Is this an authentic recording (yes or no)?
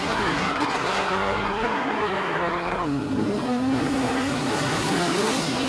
no